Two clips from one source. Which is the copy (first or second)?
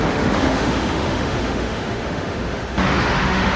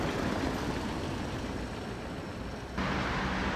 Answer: first